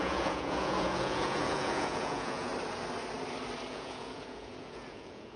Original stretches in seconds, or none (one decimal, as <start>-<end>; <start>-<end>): 2.5-3.7